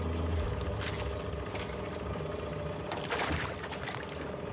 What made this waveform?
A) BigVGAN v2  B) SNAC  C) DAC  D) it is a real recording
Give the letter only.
D